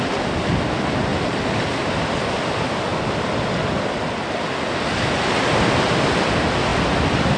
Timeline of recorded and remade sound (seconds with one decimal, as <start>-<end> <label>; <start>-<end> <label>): 0.0-7.4 recorded